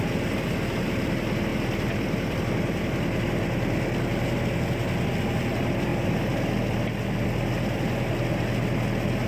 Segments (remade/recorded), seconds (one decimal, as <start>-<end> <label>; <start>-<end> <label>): 0.0-9.3 recorded